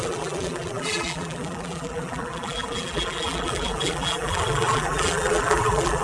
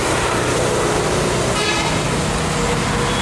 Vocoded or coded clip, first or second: first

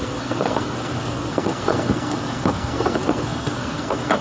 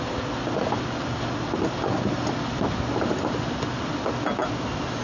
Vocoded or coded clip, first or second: first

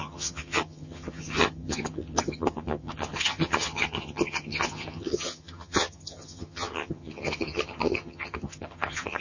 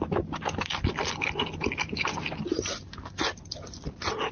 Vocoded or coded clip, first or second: first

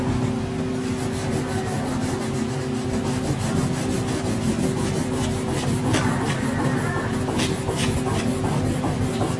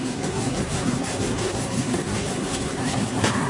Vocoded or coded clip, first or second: second